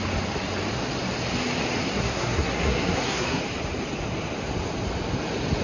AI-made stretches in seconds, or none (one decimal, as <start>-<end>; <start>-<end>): 1.8-3.4